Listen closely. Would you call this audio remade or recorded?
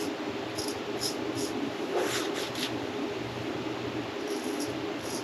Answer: recorded